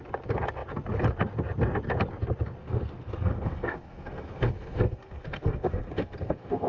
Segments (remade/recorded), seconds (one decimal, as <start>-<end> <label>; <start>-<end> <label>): 0.0-2.6 recorded; 2.6-6.7 remade